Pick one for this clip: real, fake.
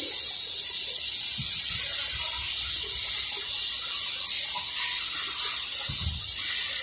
real